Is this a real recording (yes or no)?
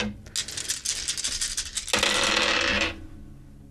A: yes